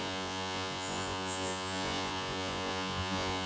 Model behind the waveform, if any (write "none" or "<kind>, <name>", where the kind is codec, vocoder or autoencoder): vocoder, Vocos